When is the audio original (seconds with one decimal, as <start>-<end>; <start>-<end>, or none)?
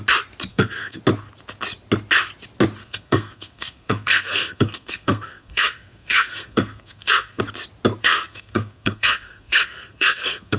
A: 0.0-0.5; 1.0-2.8; 7.4-8.0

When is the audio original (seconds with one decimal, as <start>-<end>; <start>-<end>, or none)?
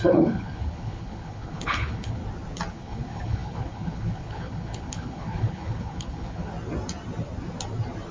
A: 2.2-2.7; 6.5-8.1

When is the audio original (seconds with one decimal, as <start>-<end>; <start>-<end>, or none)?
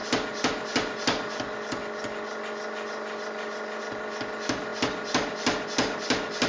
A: 0.0-6.5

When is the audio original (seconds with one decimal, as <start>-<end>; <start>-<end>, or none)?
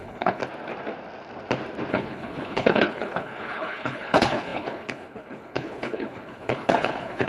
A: 0.4-1.9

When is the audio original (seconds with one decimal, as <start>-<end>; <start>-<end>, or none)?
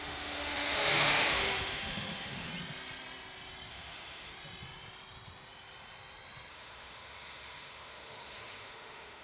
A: 2.5-3.7; 4.3-6.5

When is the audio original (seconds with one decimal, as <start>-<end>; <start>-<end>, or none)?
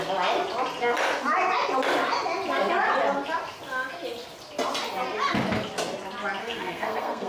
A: 0.0-6.4